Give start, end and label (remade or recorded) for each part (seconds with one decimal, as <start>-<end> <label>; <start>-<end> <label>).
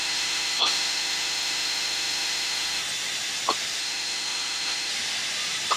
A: 0.0-2.8 remade; 2.8-3.8 recorded; 3.8-4.9 remade; 4.9-5.8 recorded